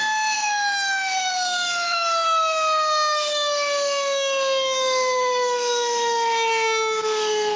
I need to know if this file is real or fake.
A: fake